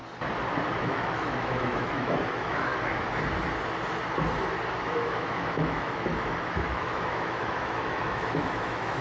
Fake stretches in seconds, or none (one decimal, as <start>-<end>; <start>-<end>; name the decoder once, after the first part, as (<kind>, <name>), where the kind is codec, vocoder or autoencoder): 0.8-2.7 (autoencoder, DAC-VAE); 4.8-9.0